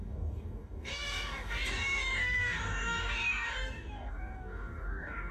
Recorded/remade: remade